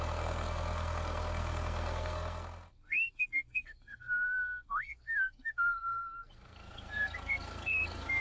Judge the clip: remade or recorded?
remade